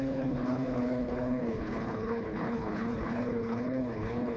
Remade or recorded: remade